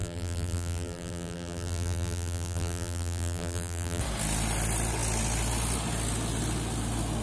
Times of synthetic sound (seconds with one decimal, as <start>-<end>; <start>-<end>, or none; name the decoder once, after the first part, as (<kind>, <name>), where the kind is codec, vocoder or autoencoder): 0.0-4.0 (vocoder, BigVGAN v2)